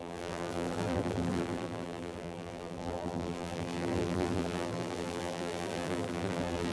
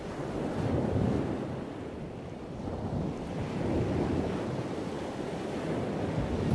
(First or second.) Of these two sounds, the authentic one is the second